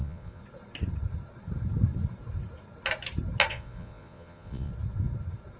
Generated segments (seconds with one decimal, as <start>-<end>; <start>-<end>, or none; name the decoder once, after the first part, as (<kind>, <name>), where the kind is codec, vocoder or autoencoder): 0.0-0.4 (vocoder, Vocos); 3.5-4.7